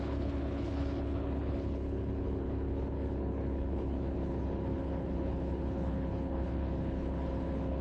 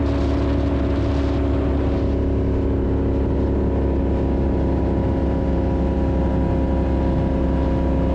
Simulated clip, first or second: first